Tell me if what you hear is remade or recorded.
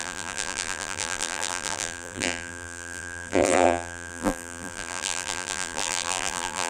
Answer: remade